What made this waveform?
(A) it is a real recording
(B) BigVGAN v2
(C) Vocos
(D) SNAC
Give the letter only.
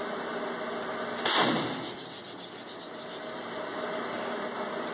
A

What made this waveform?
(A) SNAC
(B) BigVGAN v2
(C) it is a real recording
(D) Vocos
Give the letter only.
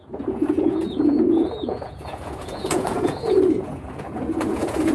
D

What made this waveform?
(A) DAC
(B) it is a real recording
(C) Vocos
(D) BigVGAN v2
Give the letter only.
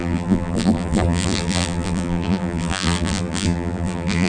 D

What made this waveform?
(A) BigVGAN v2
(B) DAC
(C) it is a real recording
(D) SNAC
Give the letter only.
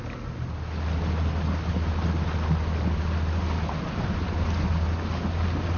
C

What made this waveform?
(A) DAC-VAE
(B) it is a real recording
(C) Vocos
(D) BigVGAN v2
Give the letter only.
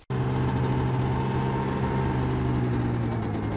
B